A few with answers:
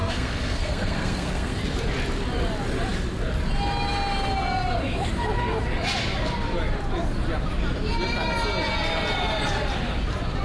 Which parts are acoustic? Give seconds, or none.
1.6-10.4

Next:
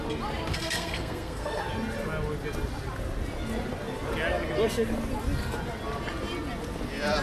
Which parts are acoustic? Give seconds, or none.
0.0-0.5; 1.6-7.2